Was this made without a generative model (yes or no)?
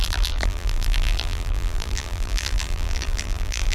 no